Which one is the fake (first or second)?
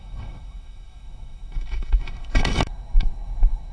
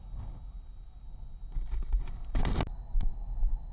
first